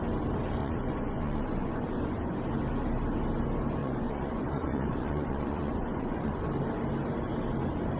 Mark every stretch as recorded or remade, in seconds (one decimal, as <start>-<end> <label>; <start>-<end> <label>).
0.0-0.6 recorded; 0.6-2.4 remade; 2.4-3.8 recorded; 3.8-6.4 remade; 6.4-8.0 recorded